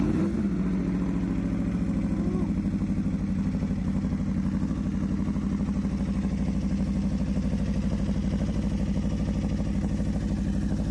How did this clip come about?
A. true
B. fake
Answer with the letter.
A